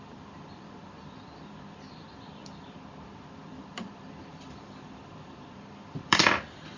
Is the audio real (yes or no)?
no